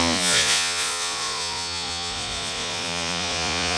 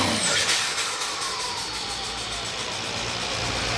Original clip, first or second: second